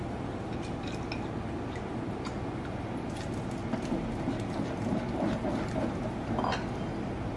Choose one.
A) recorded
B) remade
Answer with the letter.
A